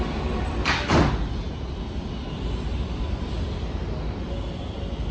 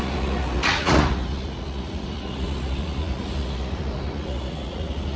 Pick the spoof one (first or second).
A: second